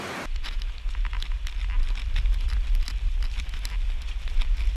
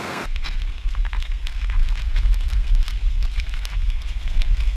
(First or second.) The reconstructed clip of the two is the second